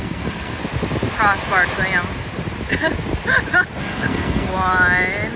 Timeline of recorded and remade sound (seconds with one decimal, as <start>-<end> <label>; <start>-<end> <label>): 0.0-0.6 remade; 0.6-3.8 recorded; 3.8-4.5 remade; 4.5-5.4 recorded